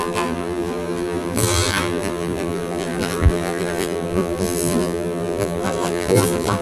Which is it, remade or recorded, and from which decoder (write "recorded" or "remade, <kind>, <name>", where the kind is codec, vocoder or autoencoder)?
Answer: remade, vocoder, BigVGAN v2